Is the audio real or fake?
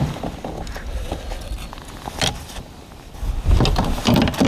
real